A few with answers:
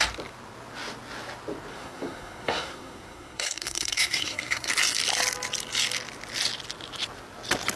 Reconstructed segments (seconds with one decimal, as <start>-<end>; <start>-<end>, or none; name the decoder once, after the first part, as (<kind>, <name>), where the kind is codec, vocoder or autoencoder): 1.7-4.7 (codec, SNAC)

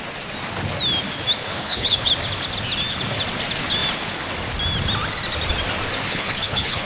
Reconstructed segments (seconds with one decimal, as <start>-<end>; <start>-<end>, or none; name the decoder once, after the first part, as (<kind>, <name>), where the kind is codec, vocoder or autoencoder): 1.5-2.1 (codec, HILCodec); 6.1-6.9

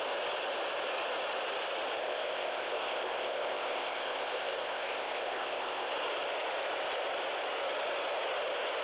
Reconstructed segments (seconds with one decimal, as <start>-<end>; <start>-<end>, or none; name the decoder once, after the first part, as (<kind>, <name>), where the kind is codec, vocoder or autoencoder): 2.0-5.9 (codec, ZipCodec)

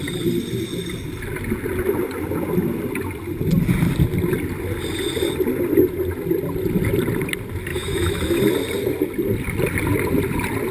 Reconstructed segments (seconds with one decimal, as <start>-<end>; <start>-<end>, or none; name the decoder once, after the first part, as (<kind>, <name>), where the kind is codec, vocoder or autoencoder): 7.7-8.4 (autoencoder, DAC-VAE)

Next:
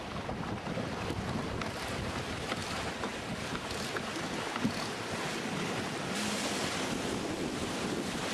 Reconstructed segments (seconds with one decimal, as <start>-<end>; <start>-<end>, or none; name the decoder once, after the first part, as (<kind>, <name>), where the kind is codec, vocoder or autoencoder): none